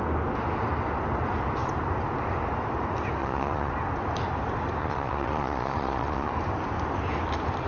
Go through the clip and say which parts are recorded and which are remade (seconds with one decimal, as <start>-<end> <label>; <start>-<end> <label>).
0.0-3.2 recorded; 3.2-3.7 remade; 3.7-4.8 recorded; 4.8-6.3 remade; 6.3-7.7 recorded